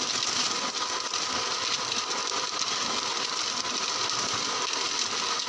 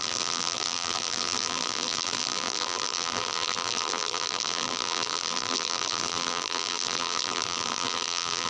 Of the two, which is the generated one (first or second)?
second